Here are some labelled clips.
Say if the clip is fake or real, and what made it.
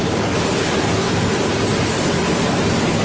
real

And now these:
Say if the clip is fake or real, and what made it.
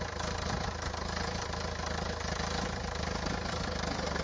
real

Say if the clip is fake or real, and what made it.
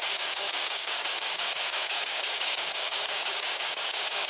fake, codec, DAC